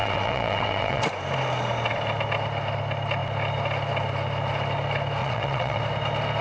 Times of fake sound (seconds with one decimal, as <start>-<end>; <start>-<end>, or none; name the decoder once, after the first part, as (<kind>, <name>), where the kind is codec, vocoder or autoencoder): 0.0-1.0 (vocoder, WaveNeXt); 5.2-5.8